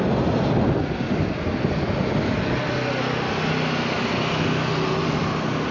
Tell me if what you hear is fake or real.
real